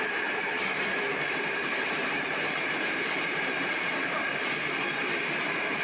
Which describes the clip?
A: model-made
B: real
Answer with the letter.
A